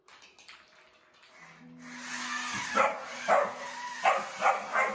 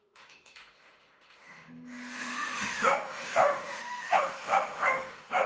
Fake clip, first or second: second